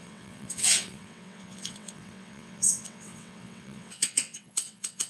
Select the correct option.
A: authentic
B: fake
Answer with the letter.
B